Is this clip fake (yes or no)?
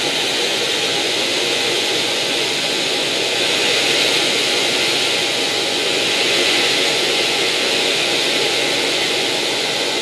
yes